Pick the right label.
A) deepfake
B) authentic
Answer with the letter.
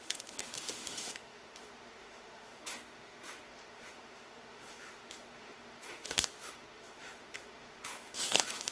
A